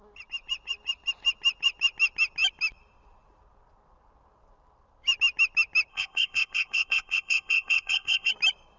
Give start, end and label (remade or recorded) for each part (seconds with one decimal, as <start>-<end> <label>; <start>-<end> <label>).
0.0-5.9 recorded; 5.9-8.3 remade; 8.3-8.8 recorded